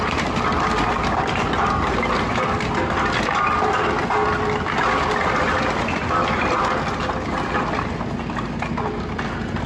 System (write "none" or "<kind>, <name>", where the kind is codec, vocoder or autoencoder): none